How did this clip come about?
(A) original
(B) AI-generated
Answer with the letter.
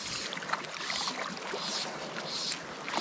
A